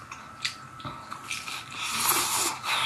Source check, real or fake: real